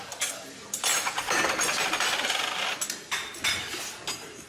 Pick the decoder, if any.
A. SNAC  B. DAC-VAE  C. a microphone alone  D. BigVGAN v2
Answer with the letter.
C